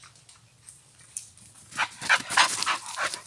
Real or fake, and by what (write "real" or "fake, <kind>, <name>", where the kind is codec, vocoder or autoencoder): real